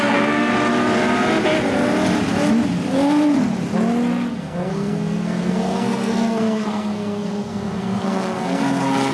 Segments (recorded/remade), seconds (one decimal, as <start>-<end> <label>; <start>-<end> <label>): 0.0-0.5 remade; 0.5-4.4 recorded; 4.4-9.1 remade